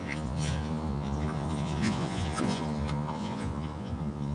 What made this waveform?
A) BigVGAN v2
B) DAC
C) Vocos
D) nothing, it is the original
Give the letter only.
C